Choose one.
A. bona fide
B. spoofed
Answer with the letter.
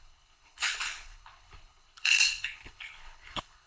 B